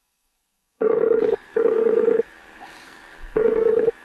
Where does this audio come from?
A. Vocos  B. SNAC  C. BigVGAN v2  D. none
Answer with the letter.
B